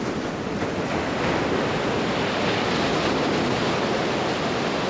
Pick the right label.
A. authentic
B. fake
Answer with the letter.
A